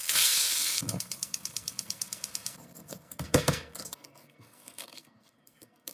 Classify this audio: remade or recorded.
remade